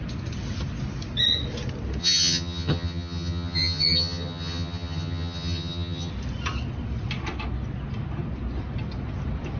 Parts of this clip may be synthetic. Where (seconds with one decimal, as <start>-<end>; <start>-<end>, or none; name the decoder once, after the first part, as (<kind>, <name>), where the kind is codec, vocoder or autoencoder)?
2.0-6.1 (vocoder, HiFi-GAN)

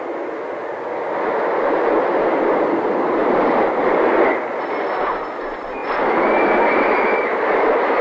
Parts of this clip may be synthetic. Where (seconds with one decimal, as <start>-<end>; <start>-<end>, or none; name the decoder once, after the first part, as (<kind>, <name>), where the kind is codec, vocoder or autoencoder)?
3.2-3.8 (vocoder, BigVGAN v2); 5.8-8.0